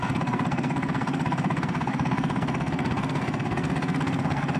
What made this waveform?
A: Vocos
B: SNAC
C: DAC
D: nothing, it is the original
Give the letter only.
B